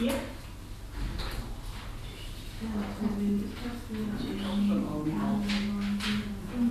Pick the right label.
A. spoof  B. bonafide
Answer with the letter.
B